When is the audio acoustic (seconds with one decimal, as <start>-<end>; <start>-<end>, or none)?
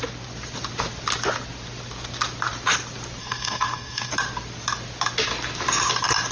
0.0-3.2; 4.1-6.3